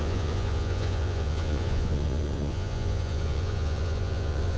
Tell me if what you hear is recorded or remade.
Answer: remade